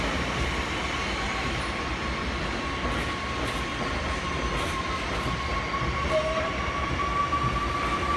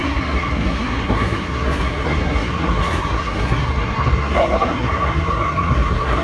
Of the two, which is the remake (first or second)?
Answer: second